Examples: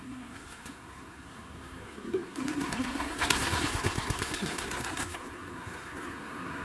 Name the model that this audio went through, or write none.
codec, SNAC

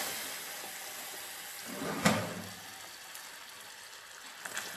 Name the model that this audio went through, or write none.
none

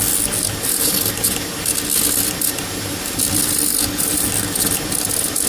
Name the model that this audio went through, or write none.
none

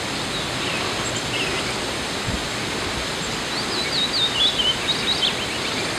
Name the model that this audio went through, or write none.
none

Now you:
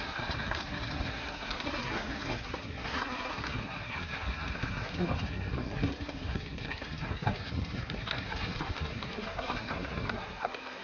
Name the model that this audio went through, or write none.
codec, SNAC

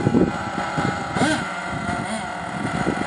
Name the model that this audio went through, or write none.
none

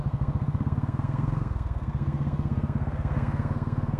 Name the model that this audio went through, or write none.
codec, SNAC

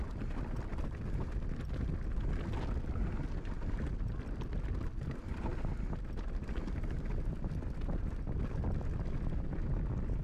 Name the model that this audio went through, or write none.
none